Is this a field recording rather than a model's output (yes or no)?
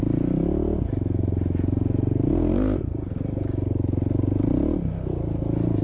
yes